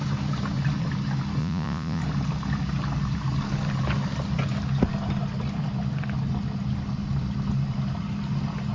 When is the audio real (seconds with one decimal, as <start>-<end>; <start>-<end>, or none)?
0.0-1.4; 2.0-8.7